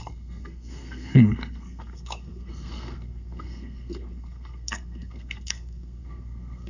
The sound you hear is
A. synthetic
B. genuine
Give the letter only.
A